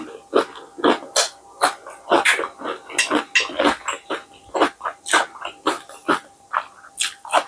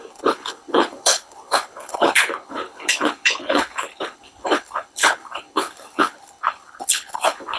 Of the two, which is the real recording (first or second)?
first